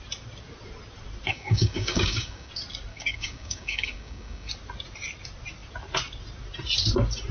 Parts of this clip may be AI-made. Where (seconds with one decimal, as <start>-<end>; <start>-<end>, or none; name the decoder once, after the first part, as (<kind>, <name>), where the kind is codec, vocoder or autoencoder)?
1.3-2.5 (codec, DAC); 2.9-4.5